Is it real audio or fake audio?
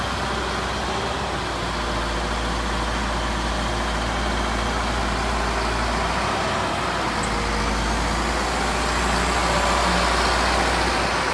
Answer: real